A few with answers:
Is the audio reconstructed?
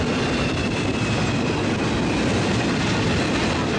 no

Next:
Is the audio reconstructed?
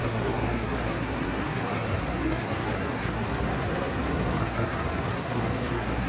yes